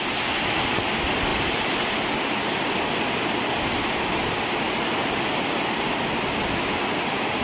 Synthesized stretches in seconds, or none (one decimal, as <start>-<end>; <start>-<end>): none